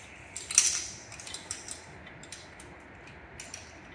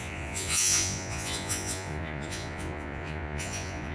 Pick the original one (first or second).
first